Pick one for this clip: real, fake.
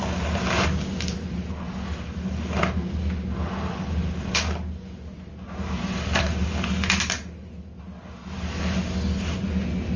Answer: real